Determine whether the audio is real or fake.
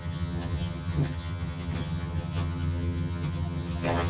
fake